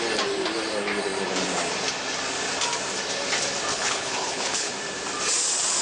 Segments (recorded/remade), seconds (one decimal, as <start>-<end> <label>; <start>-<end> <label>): 0.0-3.7 recorded; 3.7-4.7 remade; 4.7-5.8 recorded